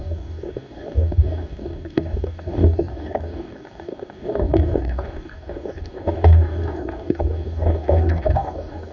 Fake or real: fake